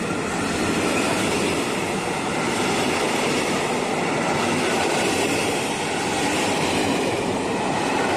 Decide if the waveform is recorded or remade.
remade